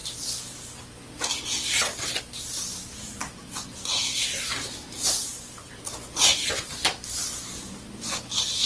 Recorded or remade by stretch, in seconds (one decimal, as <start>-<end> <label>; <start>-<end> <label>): 0.0-8.7 recorded